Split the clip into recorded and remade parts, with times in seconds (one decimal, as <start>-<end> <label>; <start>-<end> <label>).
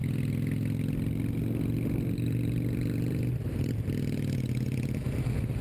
0.0-2.0 recorded; 2.0-5.6 remade